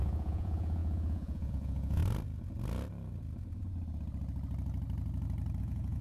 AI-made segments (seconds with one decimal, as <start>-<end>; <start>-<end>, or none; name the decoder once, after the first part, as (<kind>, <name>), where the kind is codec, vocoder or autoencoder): 0.0-2.0 (vocoder, Vocos); 5.6-6.0